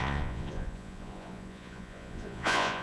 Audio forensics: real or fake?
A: fake